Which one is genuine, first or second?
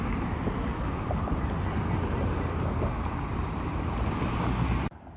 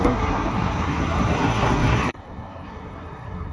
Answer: first